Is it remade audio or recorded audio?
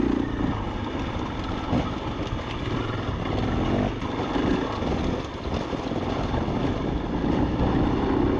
recorded